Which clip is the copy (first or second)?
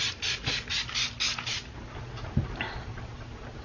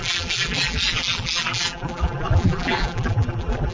second